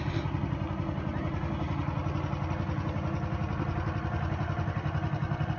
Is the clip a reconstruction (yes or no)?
no